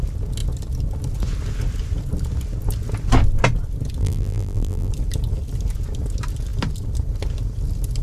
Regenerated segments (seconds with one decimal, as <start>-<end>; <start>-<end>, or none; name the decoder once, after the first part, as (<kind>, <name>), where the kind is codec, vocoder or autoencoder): 4.0-4.9 (vocoder, BigVGAN v2)